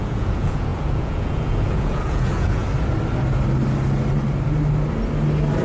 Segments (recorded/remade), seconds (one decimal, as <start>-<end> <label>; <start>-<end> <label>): 0.0-2.6 remade; 2.6-5.6 recorded